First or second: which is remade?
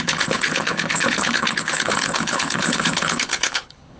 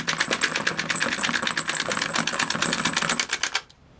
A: first